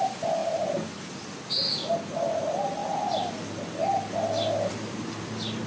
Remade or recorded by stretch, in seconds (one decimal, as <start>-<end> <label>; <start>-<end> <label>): 0.0-5.7 recorded